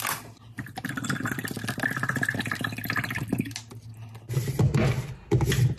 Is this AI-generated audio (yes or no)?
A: no